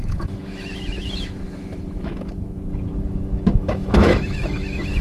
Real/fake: fake